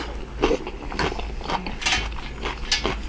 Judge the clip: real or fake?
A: real